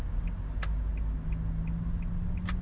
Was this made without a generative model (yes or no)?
yes